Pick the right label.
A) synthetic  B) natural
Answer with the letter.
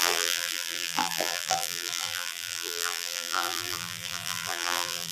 A